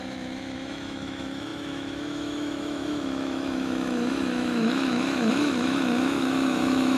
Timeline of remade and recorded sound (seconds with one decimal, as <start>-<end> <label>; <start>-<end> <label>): 0.0-7.0 remade

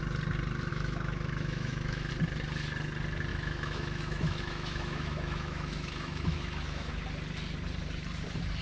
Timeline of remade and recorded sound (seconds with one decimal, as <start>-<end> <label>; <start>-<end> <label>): 0.0-0.7 recorded; 0.7-2.1 remade; 2.1-3.3 recorded; 3.3-6.9 remade; 6.9-8.6 recorded

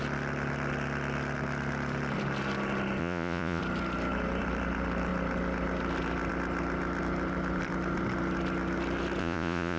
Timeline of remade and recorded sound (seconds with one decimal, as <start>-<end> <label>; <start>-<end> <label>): 0.0-3.0 recorded; 3.0-3.6 remade; 3.6-9.2 recorded; 9.2-9.8 remade

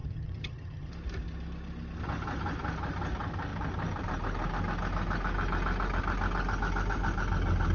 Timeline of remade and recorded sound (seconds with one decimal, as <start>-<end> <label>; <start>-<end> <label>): 0.0-0.9 remade; 0.9-7.7 recorded